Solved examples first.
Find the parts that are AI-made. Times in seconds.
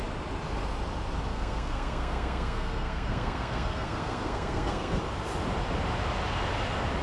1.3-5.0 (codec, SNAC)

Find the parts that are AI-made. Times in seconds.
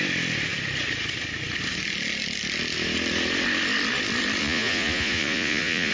4.4-5.9 (vocoder, Vocos)